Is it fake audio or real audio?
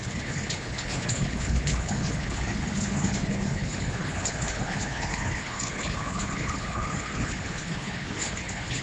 fake